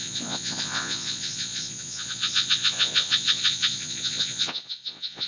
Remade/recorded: remade